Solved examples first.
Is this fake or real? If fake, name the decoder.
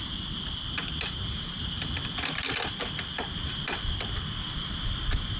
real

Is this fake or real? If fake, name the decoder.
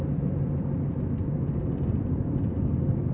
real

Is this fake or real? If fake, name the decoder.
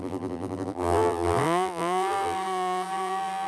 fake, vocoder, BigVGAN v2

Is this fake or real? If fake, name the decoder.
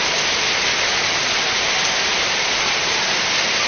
real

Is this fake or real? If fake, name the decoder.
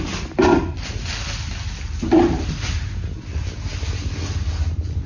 real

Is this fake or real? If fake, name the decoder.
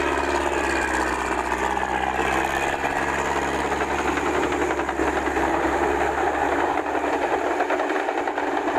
real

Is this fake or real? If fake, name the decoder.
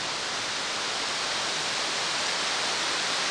real